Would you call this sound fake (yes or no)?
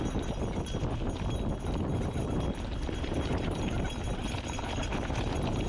no